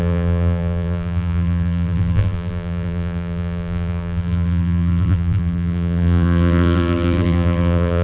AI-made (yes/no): yes